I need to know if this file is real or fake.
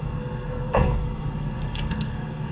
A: fake